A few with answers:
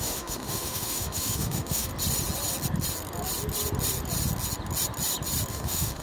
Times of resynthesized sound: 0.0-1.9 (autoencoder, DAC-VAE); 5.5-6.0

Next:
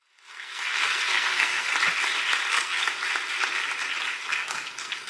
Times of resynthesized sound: 0.0-1.7 (codec, SNAC); 2.5-2.9; 4.2-5.1